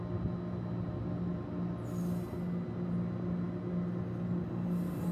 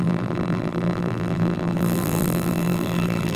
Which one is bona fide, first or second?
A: first